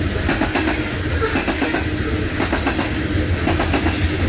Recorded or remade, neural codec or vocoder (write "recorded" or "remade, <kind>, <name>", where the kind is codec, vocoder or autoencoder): recorded